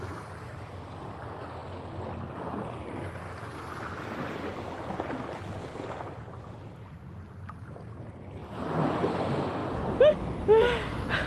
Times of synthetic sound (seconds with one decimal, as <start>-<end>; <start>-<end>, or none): none